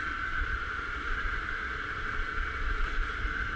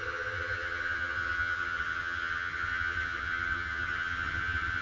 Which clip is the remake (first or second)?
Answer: second